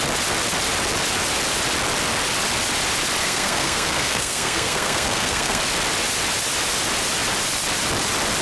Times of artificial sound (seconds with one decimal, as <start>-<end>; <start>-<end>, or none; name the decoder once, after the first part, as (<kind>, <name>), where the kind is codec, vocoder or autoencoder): 3.2-5.6 (codec, SNAC)